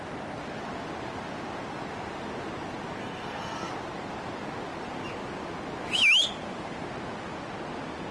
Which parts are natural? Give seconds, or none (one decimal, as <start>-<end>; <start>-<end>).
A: 0.0-3.0; 3.7-8.1